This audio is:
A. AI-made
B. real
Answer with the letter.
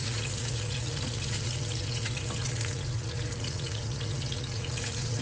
A